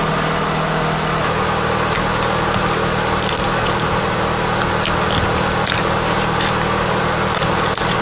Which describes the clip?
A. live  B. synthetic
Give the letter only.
A